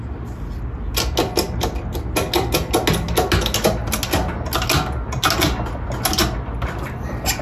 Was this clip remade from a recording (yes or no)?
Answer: no